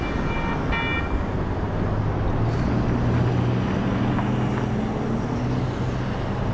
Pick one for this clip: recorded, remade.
recorded